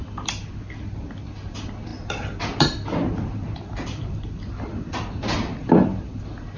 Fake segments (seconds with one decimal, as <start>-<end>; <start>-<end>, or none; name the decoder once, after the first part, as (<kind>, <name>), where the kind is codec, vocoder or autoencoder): none